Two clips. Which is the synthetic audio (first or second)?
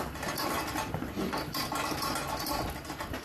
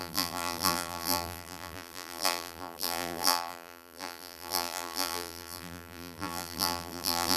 second